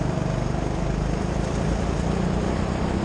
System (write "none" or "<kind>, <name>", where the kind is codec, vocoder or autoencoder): vocoder, BigVGAN v2